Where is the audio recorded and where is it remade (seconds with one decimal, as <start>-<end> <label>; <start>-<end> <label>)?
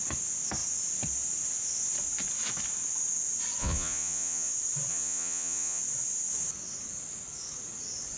0.0-3.6 recorded; 3.6-4.5 remade; 4.5-4.9 recorded; 4.9-5.8 remade; 5.8-8.2 recorded